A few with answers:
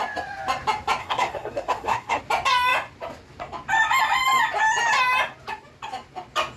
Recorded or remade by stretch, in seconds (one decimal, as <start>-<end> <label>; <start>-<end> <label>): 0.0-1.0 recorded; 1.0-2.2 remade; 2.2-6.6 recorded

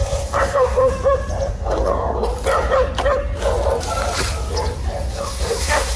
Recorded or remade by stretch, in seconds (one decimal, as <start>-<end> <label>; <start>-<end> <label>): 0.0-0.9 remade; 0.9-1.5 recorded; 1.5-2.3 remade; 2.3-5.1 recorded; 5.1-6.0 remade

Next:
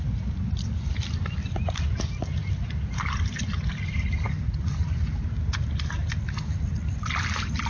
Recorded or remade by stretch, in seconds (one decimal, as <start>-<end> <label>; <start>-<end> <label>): 0.0-7.7 recorded

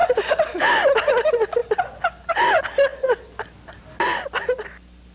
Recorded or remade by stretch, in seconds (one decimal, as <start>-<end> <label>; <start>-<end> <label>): 0.0-5.1 recorded

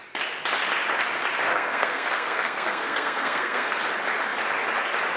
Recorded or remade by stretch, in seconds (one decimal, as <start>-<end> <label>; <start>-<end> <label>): 0.0-1.5 recorded; 1.5-3.8 remade; 3.8-5.2 recorded